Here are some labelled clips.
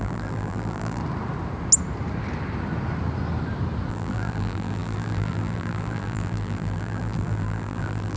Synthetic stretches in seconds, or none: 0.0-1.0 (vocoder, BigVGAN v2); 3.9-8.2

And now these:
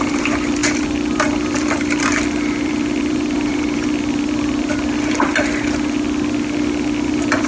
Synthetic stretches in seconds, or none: 0.0-5.3 (vocoder, BigVGAN v2); 7.1-7.5

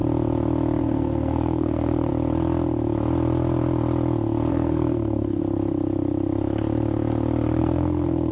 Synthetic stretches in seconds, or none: 0.8-2.1 (codec, SNAC); 4.5-5.4; 7.6-8.3

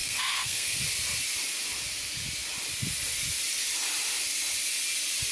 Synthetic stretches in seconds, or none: 0.0-0.8 (codec, SNAC)

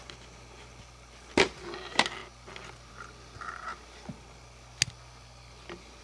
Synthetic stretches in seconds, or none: none

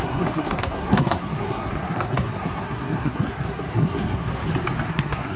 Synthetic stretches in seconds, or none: 0.0-4.4 (codec, SNAC); 4.9-5.4

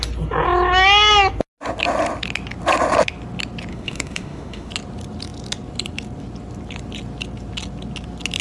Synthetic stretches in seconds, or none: 3.7-4.7 (autoencoder, DAC-VAE)